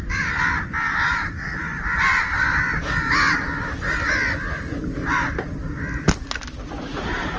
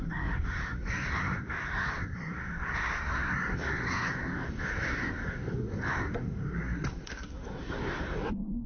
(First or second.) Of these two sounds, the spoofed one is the second